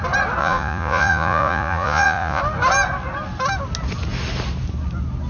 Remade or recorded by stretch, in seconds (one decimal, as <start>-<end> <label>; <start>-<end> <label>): 0.0-0.4 recorded; 0.4-2.4 remade; 2.4-5.3 recorded

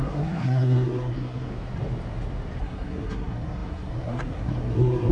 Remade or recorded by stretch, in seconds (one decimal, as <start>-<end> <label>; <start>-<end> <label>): 0.0-1.5 remade; 1.5-2.6 recorded; 2.6-5.1 remade